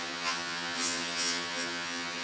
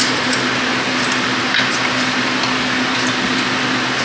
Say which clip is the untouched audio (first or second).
second